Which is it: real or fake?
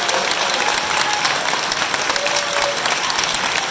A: real